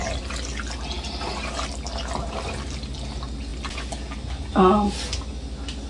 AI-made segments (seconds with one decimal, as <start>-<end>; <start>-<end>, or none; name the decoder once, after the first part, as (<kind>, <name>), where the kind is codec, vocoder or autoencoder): none